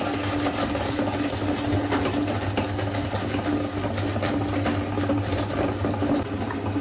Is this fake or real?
real